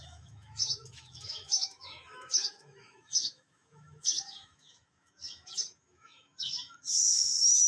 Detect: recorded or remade remade